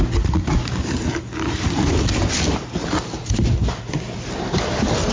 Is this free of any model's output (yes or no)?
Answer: yes